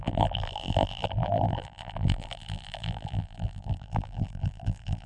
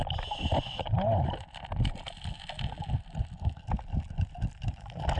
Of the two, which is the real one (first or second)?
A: second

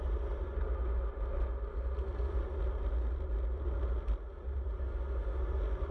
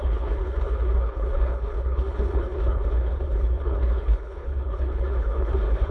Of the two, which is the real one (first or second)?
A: first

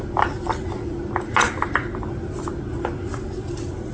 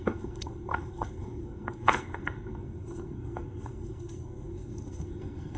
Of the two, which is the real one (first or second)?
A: first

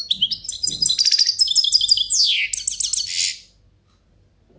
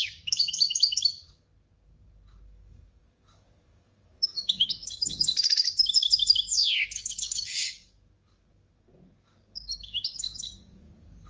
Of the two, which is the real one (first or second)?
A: first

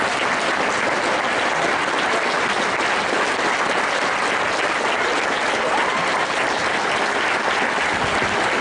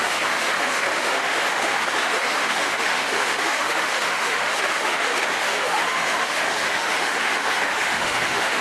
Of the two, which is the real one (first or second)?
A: first